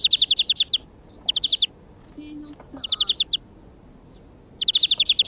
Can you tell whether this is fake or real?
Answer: real